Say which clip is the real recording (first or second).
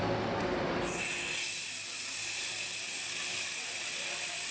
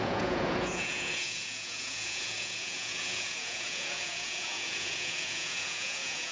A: first